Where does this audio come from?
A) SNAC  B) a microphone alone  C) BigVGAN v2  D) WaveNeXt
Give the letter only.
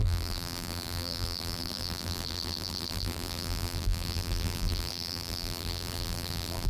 C